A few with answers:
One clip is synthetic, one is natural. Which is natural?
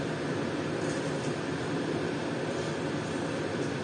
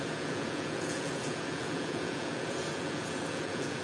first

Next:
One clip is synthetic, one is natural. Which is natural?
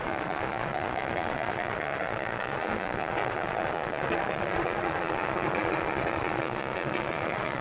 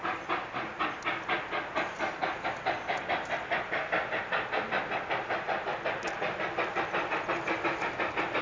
second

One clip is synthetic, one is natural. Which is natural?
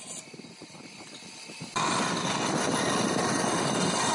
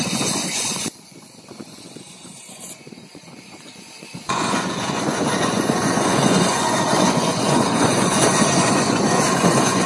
first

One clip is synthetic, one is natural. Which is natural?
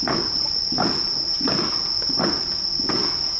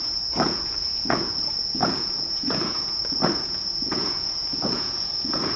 first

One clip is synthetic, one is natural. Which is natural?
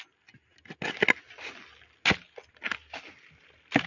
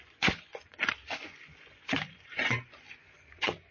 first